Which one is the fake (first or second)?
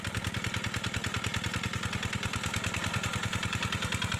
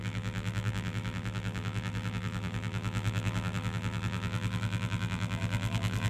second